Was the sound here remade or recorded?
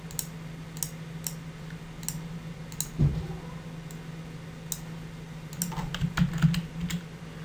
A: recorded